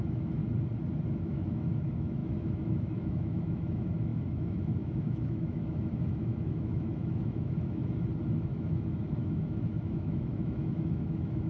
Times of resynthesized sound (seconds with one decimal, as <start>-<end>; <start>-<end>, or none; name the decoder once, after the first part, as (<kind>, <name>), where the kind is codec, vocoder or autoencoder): 0.0-0.4 (autoencoder, DAC-VAE); 1.1-7.8; 8.3-11.5